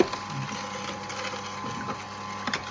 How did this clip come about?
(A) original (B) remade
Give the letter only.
A